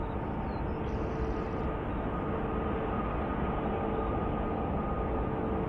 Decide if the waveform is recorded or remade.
recorded